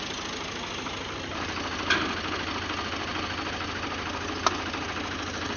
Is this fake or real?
real